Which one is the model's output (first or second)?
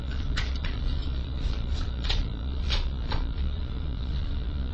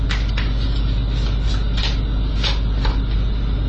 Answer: first